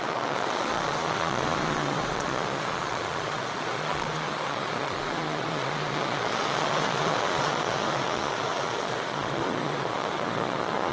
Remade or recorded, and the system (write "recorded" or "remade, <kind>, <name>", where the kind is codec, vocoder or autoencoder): remade, vocoder, Vocos